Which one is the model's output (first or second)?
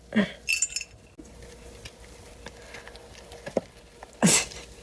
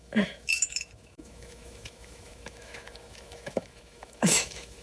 second